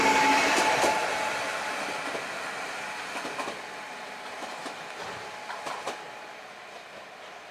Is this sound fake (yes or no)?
no